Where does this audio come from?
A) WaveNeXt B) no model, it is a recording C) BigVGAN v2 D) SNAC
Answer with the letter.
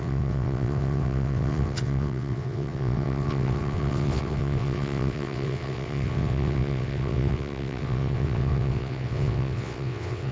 A